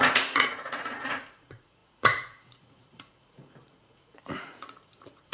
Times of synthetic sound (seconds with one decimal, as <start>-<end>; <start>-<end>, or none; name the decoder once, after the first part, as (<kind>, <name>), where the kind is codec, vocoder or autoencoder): 0.0-5.3 (vocoder, Vocos)